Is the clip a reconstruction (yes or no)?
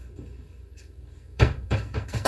yes